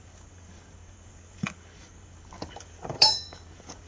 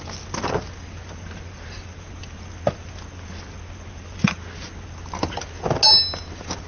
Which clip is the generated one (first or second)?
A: first